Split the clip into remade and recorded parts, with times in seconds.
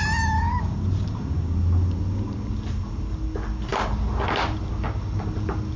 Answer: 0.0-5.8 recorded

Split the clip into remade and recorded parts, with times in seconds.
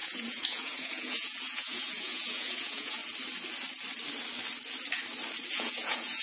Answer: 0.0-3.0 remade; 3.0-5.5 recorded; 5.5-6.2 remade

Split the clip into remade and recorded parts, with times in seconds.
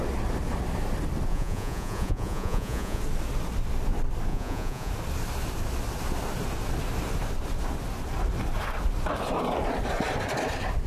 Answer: 0.0-1.3 recorded; 1.3-3.0 remade; 3.0-4.3 recorded; 4.3-4.9 remade; 4.9-10.9 recorded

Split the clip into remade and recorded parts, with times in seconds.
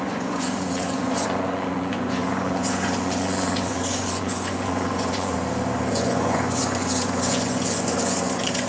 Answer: 0.0-5.3 remade; 5.3-5.9 recorded; 5.9-8.7 remade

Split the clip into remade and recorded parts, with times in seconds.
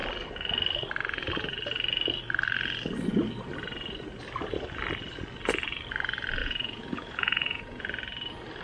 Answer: 0.0-6.4 recorded; 6.4-7.8 remade; 7.8-8.6 recorded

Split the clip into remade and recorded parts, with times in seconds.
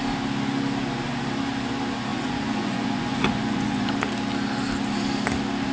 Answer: 0.0-2.1 recorded; 2.1-3.9 remade; 3.9-5.7 recorded